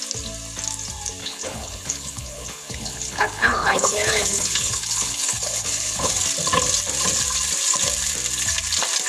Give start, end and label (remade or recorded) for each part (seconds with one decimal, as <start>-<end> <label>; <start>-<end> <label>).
0.0-1.2 recorded; 1.2-6.1 remade; 6.1-9.1 recorded